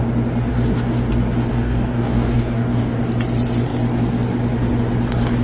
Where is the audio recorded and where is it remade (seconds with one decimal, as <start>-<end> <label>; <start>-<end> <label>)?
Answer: 0.0-0.5 recorded; 0.5-1.1 remade; 1.1-1.5 recorded; 1.5-3.0 remade; 3.0-5.4 recorded